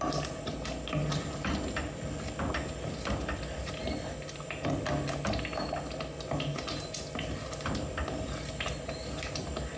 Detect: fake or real real